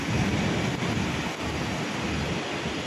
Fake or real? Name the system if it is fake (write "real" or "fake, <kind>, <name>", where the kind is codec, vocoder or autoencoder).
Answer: real